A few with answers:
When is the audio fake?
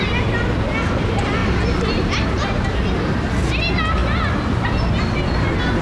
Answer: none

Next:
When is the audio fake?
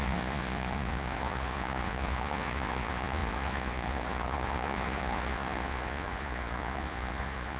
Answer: 0.0-7.6 (vocoder, Vocos)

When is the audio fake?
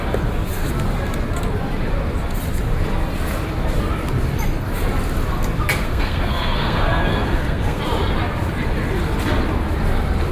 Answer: 5.8-7.8 (codec, SNAC)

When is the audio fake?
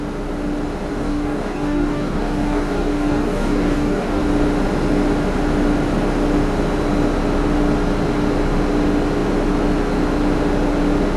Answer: 0.9-4.2 (codec, DAC)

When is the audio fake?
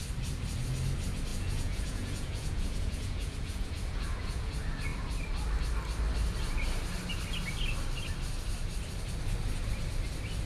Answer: 1.3-4.5 (vocoder, Vocos)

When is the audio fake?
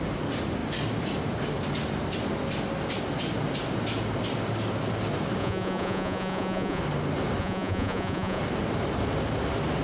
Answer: 5.4-6.8 (vocoder, Vocos); 7.4-8.4